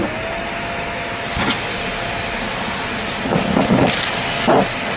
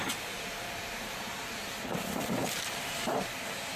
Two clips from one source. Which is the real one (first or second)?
first